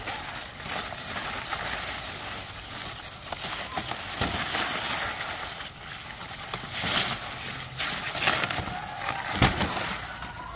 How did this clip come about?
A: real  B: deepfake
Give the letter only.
A